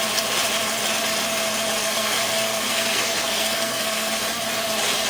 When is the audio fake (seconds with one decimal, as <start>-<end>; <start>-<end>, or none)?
1.8-4.2